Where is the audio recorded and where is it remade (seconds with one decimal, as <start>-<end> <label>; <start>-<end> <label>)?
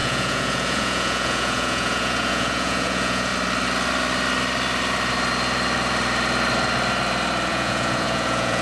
0.0-3.3 remade; 3.3-7.5 recorded; 7.5-8.6 remade